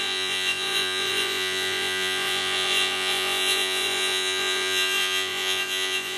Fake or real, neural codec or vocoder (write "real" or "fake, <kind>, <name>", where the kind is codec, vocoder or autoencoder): fake, vocoder, Vocos